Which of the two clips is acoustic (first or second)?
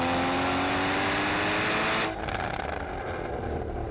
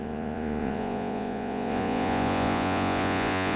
first